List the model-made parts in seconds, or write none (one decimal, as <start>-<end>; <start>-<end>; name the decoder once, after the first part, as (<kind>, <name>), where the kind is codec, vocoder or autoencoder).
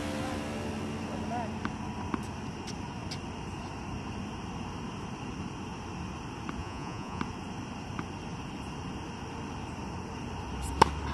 6.6-7.2 (vocoder, Vocos)